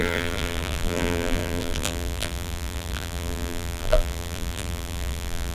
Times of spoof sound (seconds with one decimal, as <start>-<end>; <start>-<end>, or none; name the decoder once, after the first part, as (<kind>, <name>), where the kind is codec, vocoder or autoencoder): 0.0-5.5 (vocoder, BigVGAN v2)